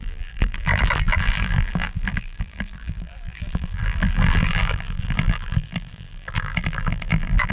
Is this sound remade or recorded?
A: remade